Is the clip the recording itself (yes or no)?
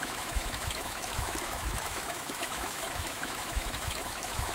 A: no